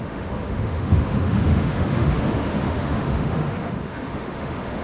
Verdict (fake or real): fake